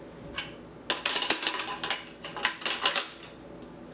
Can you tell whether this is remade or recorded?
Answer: recorded